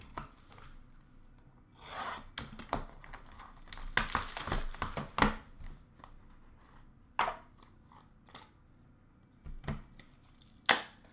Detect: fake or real real